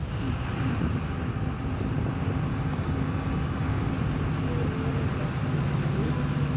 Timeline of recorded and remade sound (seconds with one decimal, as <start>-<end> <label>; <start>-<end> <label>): 0.0-2.5 recorded; 2.5-3.9 remade; 3.9-6.6 recorded